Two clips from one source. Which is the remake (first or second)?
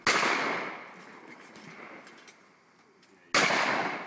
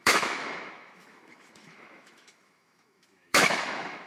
second